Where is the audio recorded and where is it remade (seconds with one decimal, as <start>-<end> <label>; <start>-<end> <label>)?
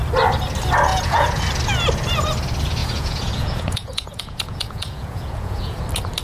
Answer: 0.0-0.9 recorded; 0.9-1.4 remade; 1.4-2.8 recorded; 2.8-5.8 remade; 5.8-6.2 recorded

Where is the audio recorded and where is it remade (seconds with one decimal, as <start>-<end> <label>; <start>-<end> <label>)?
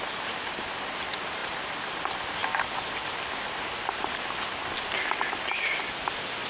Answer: 0.0-6.5 recorded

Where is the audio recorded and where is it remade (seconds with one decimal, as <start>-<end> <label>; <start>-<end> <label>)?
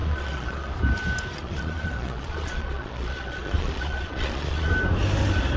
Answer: 0.0-0.7 remade; 0.7-1.3 recorded; 1.3-4.7 remade; 4.7-5.6 recorded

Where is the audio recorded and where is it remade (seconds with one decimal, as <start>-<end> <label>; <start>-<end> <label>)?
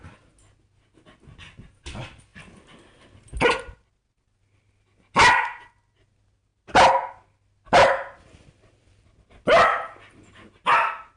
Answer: 0.0-11.2 recorded